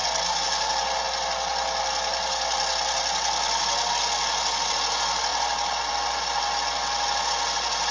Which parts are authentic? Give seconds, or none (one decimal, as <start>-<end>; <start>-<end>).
0.0-7.9